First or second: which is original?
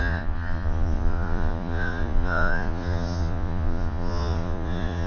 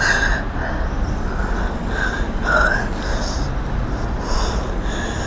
second